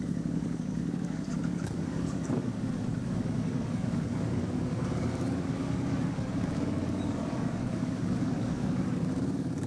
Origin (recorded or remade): remade